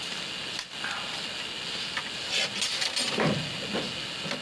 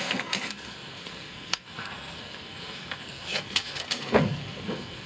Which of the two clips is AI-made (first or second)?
second